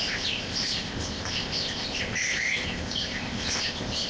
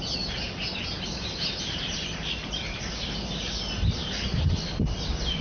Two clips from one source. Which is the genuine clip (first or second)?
second